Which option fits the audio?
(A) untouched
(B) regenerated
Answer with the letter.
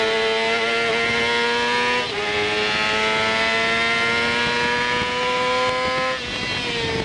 A